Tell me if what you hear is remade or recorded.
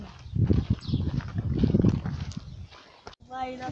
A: recorded